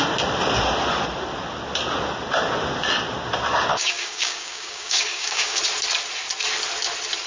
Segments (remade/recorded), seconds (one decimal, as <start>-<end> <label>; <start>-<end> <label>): 0.0-3.7 recorded; 3.7-5.6 remade; 5.6-7.3 recorded